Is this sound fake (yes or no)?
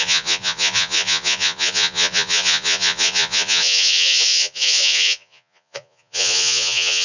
yes